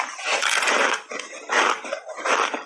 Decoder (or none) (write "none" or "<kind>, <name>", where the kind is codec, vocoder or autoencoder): none